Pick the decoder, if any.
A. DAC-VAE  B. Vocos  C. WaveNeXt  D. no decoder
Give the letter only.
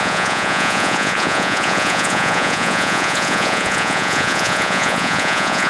B